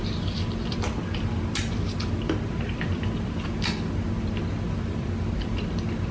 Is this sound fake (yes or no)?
yes